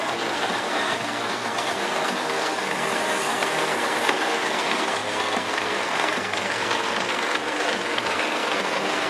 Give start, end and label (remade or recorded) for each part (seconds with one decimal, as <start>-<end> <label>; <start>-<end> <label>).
0.0-9.1 remade